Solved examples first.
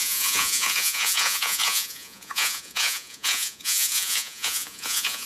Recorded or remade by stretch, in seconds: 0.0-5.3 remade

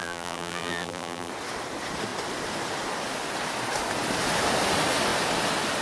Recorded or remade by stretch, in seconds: 0.0-1.3 remade; 1.3-5.8 recorded